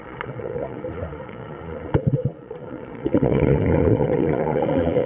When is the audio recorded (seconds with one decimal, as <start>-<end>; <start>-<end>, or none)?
none